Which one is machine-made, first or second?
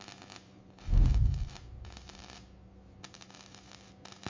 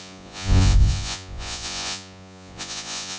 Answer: second